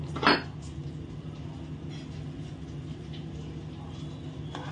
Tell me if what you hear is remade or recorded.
recorded